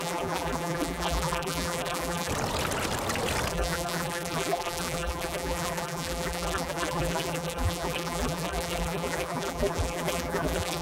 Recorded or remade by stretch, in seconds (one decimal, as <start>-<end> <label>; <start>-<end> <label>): 0.0-2.3 remade; 2.3-3.5 recorded; 3.5-10.8 remade